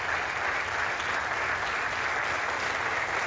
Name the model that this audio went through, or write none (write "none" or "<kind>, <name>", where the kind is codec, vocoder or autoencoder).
none